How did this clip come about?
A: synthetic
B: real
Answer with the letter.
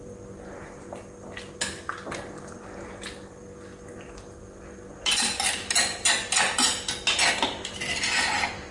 B